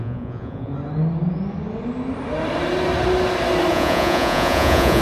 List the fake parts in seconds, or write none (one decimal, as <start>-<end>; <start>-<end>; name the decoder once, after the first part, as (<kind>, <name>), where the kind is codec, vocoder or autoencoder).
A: 0.0-0.7 (vocoder, Vocos); 3.7-5.0